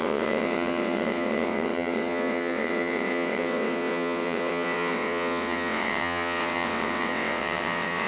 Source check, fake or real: fake